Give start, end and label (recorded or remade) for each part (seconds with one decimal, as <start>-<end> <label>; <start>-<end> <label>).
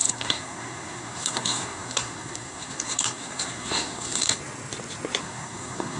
0.0-4.4 remade; 4.4-5.2 recorded; 5.2-6.0 remade